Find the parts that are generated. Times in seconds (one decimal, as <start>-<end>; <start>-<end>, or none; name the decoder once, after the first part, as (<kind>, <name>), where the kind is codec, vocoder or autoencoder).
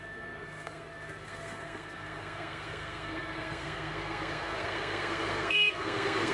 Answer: 0.0-6.3 (codec, SNAC)